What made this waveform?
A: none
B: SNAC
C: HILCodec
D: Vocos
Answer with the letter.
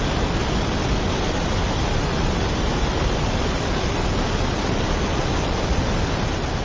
A